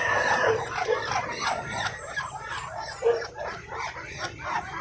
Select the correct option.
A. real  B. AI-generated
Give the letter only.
B